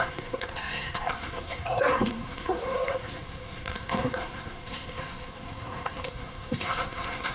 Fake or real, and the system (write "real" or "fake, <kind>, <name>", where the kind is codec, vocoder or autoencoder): fake, codec, SNAC